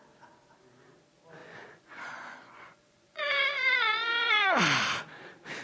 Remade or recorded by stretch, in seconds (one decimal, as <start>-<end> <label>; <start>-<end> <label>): 0.0-1.4 recorded; 1.4-4.6 remade; 4.6-5.6 recorded